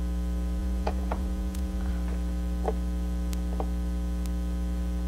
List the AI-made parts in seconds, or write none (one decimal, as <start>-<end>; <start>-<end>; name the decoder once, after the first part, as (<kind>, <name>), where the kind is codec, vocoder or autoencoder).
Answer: 0.6-1.9 (vocoder, Vocos)